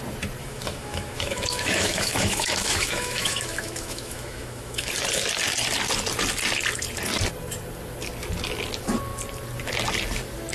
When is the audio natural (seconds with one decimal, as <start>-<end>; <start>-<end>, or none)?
0.0-0.4; 4.9-10.5